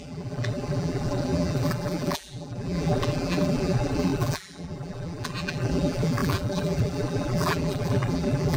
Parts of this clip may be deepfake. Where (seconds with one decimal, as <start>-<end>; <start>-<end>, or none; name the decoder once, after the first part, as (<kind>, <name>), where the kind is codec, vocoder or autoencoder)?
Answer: 0.0-8.6 (vocoder, BigVGAN v2)